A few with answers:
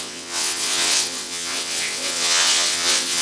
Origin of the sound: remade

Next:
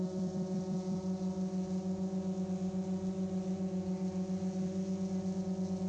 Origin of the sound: recorded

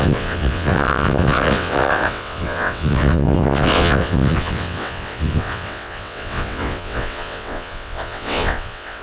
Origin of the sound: remade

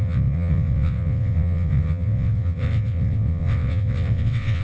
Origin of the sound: remade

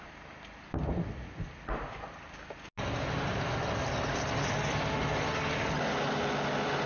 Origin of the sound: recorded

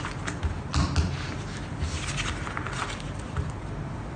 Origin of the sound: recorded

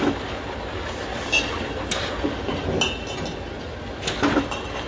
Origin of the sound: recorded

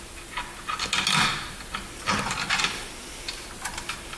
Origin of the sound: recorded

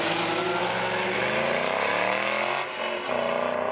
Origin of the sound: recorded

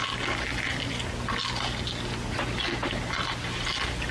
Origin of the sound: recorded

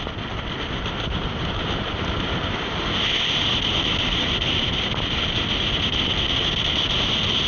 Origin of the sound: recorded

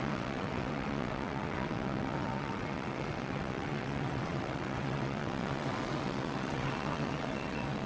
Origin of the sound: remade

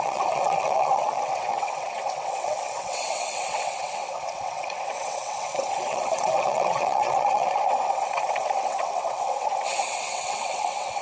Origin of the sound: remade